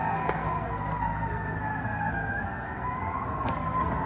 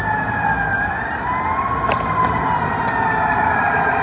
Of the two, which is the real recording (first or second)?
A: second